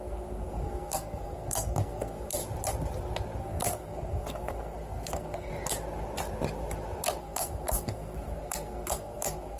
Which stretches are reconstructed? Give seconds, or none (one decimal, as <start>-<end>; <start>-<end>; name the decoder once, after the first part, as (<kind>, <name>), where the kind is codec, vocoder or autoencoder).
0.0-2.4 (codec, SNAC); 3.4-5.5; 7.2-9.6